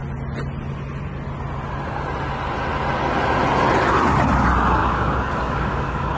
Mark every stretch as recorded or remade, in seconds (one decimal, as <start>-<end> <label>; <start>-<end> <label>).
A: 0.0-4.8 recorded; 4.8-6.2 remade